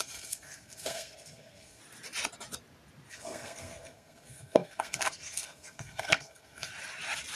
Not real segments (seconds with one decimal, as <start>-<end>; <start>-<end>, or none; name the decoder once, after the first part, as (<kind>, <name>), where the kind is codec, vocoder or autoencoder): 0.0-1.8 (codec, SNAC); 3.1-6.7